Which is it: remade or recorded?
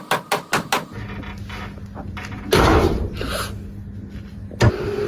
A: recorded